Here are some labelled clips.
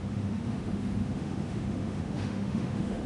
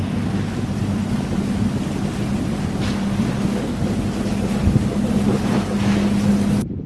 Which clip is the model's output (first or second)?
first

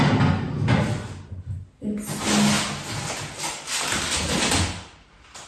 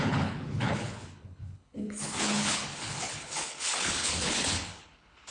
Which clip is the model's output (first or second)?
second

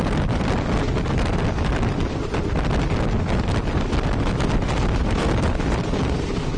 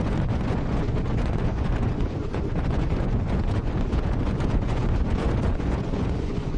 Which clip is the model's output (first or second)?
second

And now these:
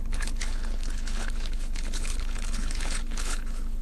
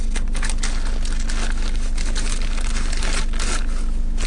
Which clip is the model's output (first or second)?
first